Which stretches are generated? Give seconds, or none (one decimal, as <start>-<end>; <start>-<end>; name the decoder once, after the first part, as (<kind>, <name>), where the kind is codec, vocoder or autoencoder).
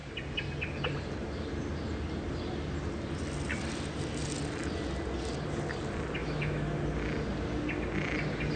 6.2-6.8 (autoencoder, DAC-VAE)